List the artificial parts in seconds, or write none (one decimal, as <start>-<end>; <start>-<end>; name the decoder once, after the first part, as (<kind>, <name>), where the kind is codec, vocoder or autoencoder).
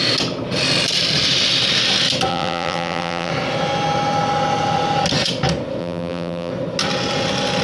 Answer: 2.3-3.3 (vocoder, BigVGAN v2); 5.8-6.5